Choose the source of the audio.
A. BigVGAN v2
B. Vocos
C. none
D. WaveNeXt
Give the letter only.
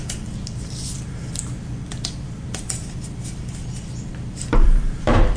A